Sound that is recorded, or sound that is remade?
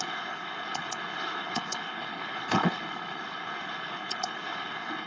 remade